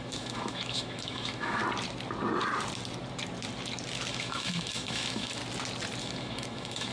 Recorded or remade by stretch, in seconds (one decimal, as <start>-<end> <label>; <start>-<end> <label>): 0.0-1.6 remade; 1.6-4.1 recorded; 4.1-5.4 remade; 5.4-6.0 recorded; 6.0-6.9 remade